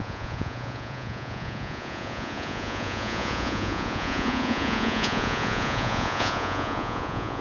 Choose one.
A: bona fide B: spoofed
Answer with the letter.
B